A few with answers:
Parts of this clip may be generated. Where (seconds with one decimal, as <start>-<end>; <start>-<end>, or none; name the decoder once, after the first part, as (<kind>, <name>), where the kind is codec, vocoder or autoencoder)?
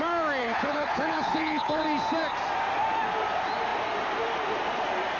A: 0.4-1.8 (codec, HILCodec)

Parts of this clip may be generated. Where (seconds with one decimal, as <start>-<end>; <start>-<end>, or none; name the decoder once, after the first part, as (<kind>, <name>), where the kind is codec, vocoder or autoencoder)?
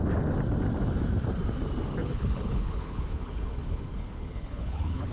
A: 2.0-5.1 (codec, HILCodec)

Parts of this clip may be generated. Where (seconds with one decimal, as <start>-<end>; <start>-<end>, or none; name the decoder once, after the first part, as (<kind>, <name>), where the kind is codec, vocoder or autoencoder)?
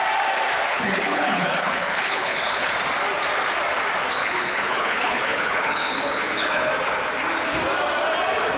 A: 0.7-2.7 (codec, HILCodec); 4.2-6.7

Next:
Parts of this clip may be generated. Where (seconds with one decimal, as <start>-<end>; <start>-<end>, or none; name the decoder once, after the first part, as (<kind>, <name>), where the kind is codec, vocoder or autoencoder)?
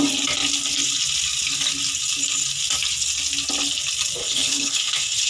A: 4.2-5.3 (codec, HILCodec)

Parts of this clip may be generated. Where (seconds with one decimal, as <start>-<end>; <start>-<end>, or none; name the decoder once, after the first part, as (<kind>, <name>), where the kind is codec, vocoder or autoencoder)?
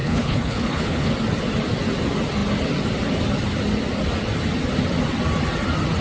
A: 0.0-1.1 (codec, HILCodec)